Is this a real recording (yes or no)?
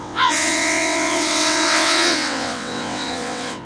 no